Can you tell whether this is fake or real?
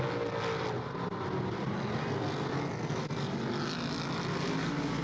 real